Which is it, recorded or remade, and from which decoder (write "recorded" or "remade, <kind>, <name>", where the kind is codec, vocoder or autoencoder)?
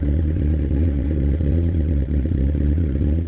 remade, vocoder, Vocos